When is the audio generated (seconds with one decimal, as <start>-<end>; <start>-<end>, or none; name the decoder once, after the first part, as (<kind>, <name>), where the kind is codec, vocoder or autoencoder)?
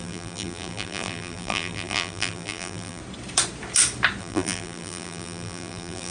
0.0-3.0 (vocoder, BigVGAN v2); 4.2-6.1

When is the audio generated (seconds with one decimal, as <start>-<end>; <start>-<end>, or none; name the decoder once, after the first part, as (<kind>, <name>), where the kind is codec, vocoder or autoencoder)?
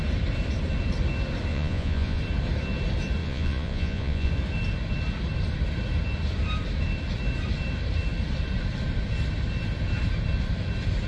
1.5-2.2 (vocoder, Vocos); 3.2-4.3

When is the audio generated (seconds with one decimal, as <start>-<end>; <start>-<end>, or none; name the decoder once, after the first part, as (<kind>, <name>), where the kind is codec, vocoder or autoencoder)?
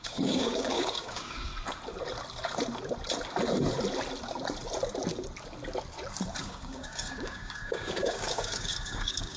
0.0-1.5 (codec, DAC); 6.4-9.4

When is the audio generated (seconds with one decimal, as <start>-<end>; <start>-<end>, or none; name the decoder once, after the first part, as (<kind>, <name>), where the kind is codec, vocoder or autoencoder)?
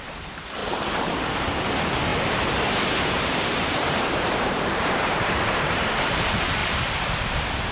0.6-1.5 (vocoder, BigVGAN v2); 2.1-5.4; 6.6-7.7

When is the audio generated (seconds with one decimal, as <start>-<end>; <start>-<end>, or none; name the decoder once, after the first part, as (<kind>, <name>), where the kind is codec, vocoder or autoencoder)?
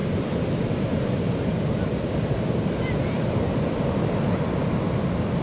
0.0-3.2 (vocoder, BigVGAN v2)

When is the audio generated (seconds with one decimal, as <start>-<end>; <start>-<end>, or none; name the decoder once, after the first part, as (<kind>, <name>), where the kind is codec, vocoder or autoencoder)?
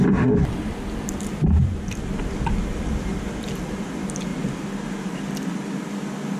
1.3-2.2 (vocoder, BigVGAN v2)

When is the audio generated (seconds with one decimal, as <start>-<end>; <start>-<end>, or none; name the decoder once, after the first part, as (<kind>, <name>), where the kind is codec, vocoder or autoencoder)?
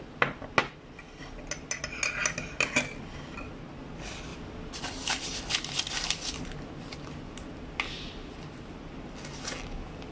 none